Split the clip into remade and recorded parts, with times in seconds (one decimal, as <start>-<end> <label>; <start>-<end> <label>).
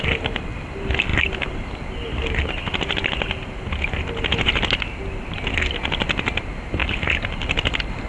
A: 0.0-8.1 recorded